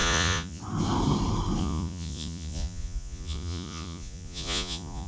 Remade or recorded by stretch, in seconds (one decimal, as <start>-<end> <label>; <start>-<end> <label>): 0.0-0.6 remade; 0.6-1.6 recorded; 1.6-5.1 remade